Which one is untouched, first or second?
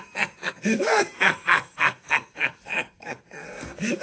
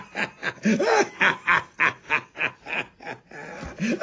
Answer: second